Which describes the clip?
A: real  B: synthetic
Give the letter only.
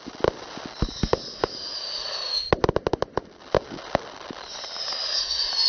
A